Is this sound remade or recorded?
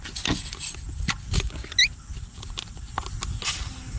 recorded